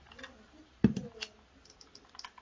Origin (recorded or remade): recorded